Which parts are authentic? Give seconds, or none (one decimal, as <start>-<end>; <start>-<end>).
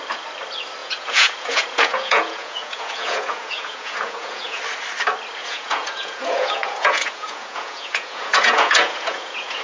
0.0-0.8; 4.6-5.4